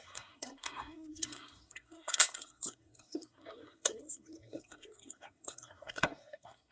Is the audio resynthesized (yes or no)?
yes